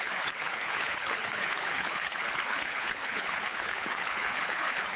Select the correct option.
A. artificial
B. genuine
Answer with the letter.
A